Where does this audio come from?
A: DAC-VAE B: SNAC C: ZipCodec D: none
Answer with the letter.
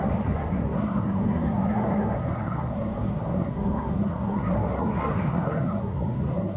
B